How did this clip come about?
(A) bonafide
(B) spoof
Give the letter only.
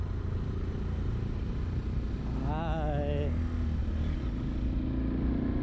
A